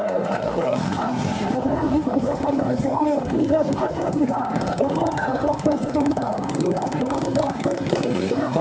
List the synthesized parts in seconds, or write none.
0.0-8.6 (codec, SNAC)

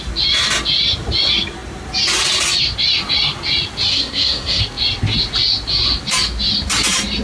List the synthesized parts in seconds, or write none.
3.9-4.6 (codec, SNAC)

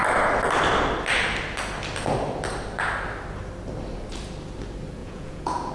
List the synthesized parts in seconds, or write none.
5.0-5.7 (vocoder, Vocos)

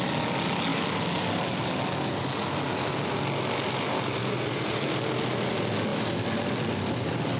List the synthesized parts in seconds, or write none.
none

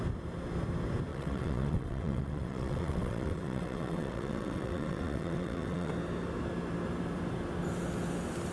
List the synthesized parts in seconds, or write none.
1.1-5.9 (vocoder, WaveNeXt)